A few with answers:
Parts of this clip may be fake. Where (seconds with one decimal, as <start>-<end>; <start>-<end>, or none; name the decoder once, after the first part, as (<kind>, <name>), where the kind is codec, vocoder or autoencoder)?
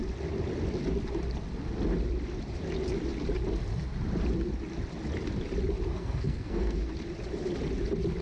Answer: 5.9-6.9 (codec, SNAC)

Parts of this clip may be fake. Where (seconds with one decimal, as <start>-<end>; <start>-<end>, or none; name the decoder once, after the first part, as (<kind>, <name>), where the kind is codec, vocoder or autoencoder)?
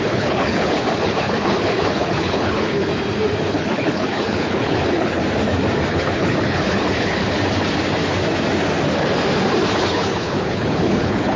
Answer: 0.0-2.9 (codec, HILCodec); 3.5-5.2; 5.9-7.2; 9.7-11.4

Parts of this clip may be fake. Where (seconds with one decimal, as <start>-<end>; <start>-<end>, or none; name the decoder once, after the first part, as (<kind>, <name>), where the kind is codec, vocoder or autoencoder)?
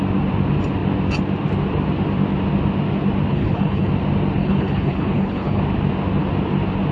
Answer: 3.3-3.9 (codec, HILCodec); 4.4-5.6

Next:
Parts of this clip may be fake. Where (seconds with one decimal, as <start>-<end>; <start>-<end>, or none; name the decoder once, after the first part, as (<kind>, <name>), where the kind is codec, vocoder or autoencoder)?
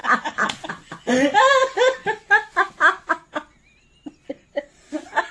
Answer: 0.0-0.7 (vocoder, BigVGAN v2); 4.3-5.3